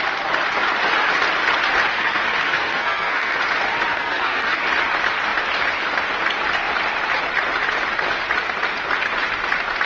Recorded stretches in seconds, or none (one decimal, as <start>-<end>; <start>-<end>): 0.0-1.9; 3.4-3.9; 4.6-9.9